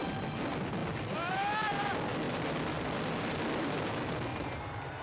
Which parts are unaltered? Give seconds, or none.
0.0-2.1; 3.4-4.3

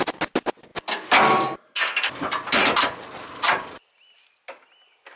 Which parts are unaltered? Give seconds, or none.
0.0-5.2

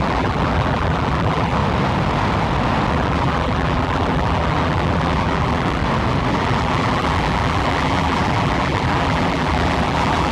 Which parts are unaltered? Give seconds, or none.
1.6-2.9; 5.8-6.3

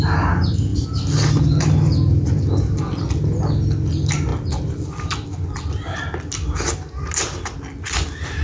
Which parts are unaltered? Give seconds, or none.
0.0-8.4

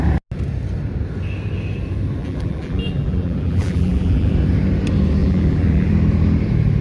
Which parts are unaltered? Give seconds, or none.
0.0-2.2; 4.3-5.2; 5.9-6.8

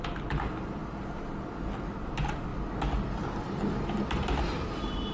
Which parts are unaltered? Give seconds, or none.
0.0-5.1

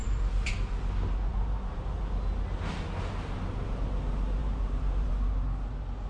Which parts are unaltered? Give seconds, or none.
0.5-1.3; 2.0-4.4; 5.1-6.1